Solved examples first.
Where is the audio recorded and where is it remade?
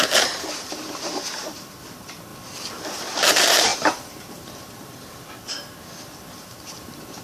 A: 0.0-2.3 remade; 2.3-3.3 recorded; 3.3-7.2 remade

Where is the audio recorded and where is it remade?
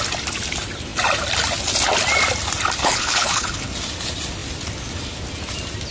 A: 0.0-2.8 recorded; 2.8-3.7 remade; 3.7-5.9 recorded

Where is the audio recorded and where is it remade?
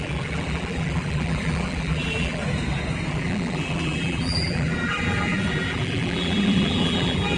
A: 0.0-2.4 remade; 2.4-3.1 recorded; 3.1-7.4 remade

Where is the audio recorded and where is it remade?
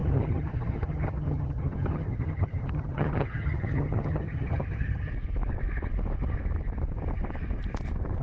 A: 0.0-5.1 remade; 5.1-8.2 recorded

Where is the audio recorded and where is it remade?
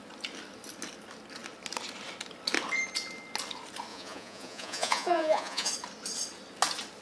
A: 0.0-3.9 recorded; 3.9-5.7 remade; 5.7-7.0 recorded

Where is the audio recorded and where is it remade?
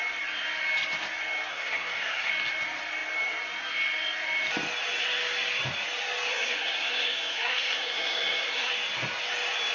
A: 0.0-1.5 recorded; 1.5-2.3 remade; 2.3-6.3 recorded; 6.3-8.7 remade; 8.7-9.7 recorded